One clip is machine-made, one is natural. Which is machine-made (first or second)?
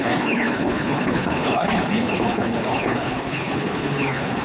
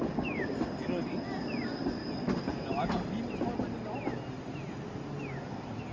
first